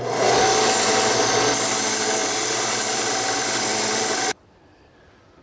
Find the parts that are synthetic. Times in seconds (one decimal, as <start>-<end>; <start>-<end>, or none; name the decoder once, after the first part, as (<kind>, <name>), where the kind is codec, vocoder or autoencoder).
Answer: 2.2-4.9 (vocoder, BigVGAN v2)